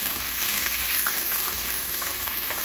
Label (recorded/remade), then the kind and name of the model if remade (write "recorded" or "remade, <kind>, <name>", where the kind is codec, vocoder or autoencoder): remade, codec, DAC